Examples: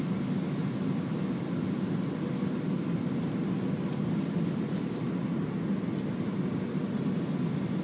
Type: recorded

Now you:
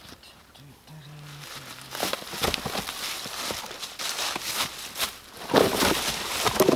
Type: recorded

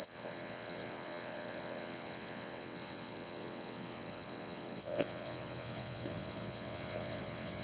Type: remade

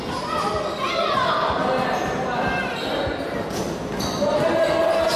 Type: recorded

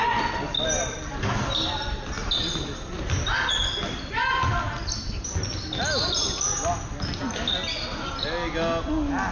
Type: recorded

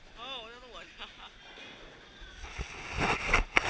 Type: recorded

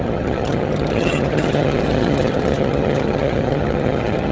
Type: remade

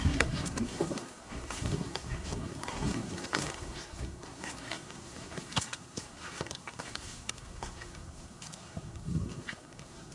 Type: remade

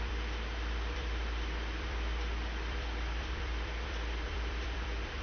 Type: remade